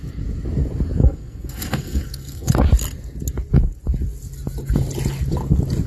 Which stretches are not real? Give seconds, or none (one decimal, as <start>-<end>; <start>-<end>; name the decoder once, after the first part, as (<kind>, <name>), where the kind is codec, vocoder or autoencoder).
1.0-2.5 (codec, SNAC)

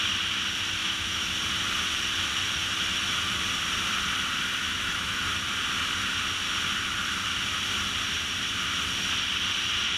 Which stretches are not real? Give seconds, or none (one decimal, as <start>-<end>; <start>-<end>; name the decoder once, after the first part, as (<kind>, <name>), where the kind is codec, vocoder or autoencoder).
0.8-1.3 (autoencoder, DAC-VAE); 4.6-5.2